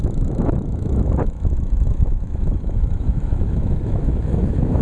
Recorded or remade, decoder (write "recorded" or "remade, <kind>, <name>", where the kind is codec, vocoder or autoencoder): remade, autoencoder, DAC-VAE